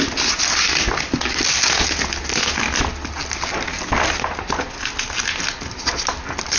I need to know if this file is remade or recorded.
recorded